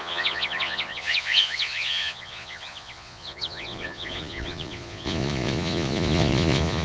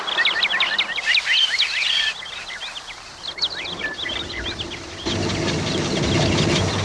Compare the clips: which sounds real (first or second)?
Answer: second